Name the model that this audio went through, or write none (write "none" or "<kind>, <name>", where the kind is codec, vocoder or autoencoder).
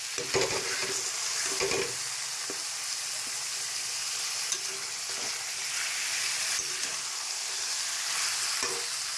none